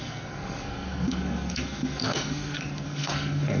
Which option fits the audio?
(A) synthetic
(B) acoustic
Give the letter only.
A